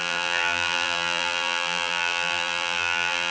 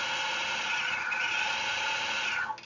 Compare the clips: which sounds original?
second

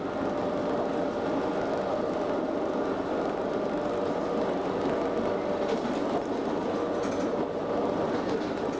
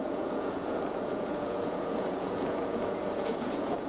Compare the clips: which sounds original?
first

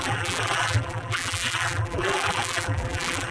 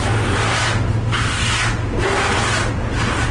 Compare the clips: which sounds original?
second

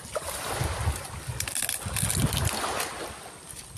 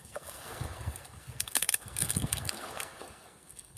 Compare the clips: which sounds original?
first